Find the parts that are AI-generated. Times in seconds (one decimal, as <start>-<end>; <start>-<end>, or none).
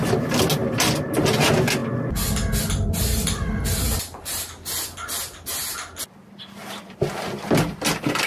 none